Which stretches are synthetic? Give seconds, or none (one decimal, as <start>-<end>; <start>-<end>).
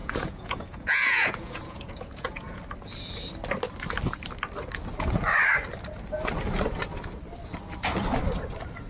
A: 0.0-2.6